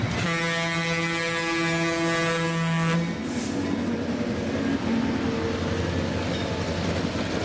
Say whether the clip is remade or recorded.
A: recorded